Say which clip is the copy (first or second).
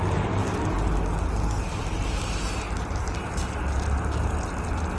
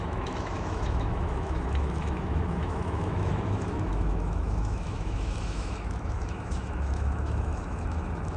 second